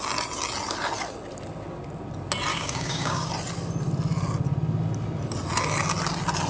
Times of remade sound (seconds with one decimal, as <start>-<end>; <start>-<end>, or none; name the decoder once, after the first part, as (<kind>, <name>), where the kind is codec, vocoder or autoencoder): 2.5-3.3 (codec, DAC)